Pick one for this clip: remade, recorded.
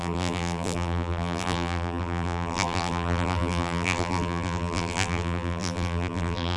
remade